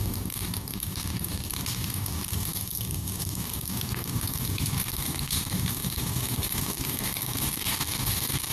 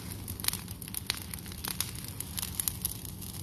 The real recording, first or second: second